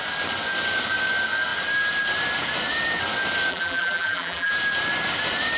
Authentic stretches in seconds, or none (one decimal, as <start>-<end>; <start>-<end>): 0.0-3.5; 4.5-5.6